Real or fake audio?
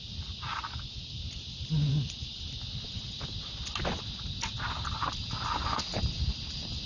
real